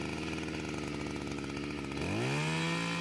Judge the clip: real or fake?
real